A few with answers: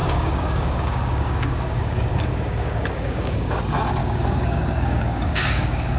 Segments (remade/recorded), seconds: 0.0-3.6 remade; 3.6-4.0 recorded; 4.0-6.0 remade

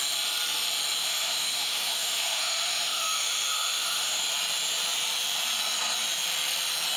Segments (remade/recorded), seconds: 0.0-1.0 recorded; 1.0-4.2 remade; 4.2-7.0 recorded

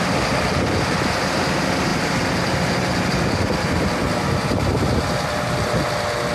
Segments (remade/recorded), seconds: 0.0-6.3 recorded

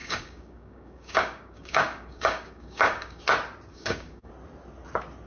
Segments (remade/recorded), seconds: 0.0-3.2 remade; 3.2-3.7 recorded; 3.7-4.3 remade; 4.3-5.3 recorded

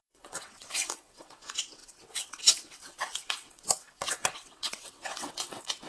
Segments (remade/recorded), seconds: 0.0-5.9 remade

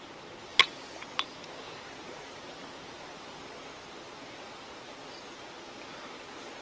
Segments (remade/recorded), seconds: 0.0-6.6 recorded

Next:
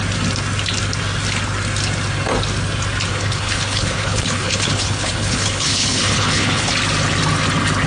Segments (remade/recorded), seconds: 0.0-3.1 recorded; 3.1-6.7 remade; 6.7-7.9 recorded